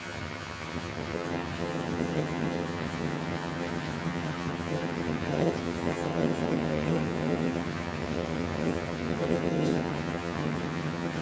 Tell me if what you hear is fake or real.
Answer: fake